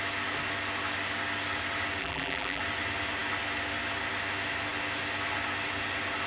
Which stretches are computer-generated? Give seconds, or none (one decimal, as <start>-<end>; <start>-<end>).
2.0-2.6